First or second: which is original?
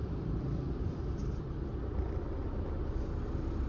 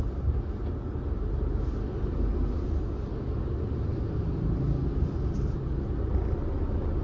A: second